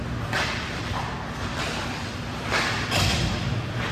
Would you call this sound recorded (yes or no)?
no